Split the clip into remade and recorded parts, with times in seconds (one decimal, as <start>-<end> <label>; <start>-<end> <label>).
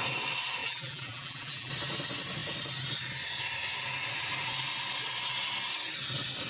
0.0-0.6 recorded; 0.6-1.7 remade; 1.7-6.5 recorded